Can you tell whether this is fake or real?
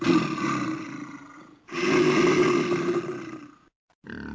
real